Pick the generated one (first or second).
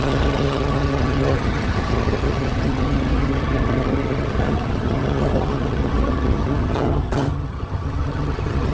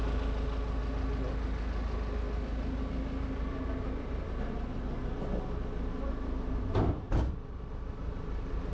first